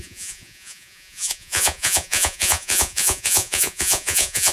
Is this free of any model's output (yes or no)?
no